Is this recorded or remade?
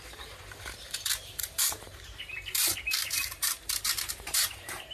remade